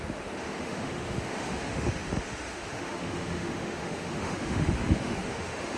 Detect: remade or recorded remade